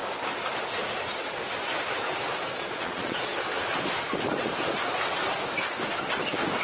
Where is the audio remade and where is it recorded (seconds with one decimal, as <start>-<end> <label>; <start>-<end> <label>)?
0.0-2.5 recorded; 2.5-3.3 remade; 3.3-6.6 recorded

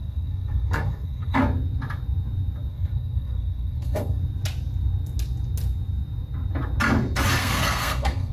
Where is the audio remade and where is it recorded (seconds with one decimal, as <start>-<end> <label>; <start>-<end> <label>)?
0.0-1.4 remade; 1.4-2.7 recorded; 2.7-4.2 remade; 4.2-7.4 recorded; 7.4-8.3 remade

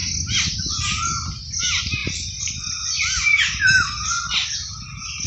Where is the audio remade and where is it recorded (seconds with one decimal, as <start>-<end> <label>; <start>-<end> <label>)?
0.0-5.3 recorded

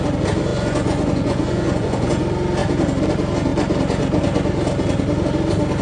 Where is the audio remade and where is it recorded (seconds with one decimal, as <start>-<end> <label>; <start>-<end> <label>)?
0.0-0.5 recorded; 0.5-2.2 remade; 2.2-5.8 recorded

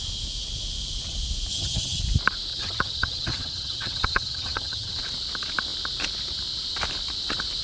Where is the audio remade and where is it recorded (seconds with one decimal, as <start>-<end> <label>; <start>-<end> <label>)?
0.0-1.5 recorded; 1.5-2.0 remade; 2.0-2.5 recorded; 2.5-5.0 remade; 5.0-7.6 recorded

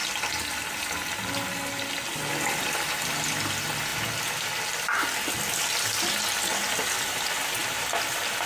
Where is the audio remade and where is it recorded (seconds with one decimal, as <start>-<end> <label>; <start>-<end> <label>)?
0.0-8.5 recorded